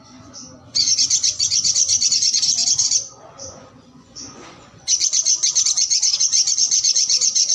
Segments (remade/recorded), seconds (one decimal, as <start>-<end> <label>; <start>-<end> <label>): 0.0-7.5 remade